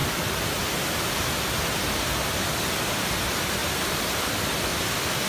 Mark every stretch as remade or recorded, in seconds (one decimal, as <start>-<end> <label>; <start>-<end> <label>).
0.0-3.6 recorded; 3.6-4.2 remade; 4.2-5.3 recorded